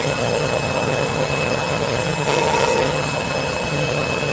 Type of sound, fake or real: fake